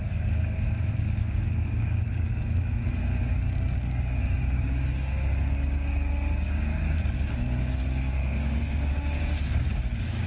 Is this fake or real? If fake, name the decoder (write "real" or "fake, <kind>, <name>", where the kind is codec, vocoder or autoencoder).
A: fake, codec, DAC